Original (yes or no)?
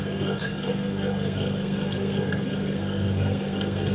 no